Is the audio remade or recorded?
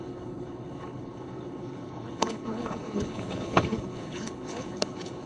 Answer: remade